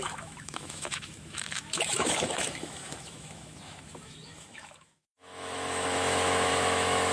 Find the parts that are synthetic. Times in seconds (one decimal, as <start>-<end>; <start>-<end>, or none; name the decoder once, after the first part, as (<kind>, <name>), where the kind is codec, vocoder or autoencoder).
0.0-7.1 (autoencoder, DAC-VAE)